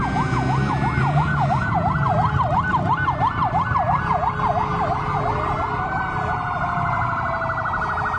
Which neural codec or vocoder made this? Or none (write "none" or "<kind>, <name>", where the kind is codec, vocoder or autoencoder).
none